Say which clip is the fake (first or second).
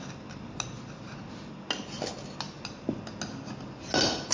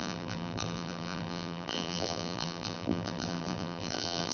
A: second